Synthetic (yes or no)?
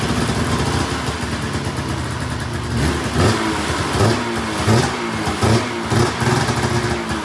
no